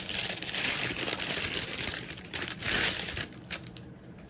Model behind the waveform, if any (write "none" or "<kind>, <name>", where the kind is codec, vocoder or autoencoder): none